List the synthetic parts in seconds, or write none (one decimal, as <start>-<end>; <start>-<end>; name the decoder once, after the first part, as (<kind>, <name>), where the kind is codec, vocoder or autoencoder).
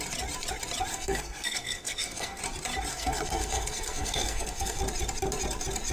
0.9-2.4 (codec, SNAC); 2.9-4.8